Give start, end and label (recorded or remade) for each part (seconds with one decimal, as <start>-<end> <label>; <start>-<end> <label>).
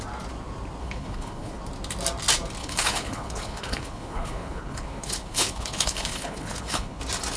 0.0-0.8 recorded; 0.8-1.6 remade; 1.6-2.6 recorded; 2.6-7.0 remade; 7.0-7.4 recorded